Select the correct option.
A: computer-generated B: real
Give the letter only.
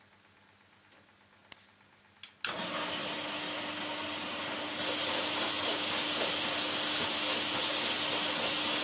B